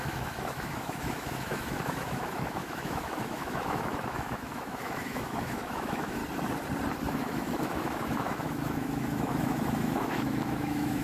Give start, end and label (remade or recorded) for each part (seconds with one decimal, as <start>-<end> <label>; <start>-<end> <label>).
0.0-6.2 remade; 6.2-7.1 recorded; 7.1-11.0 remade